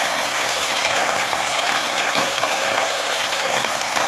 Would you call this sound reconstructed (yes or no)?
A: yes